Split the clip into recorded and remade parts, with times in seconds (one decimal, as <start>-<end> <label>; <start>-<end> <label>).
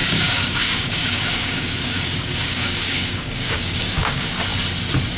0.0-4.5 remade; 4.5-5.2 recorded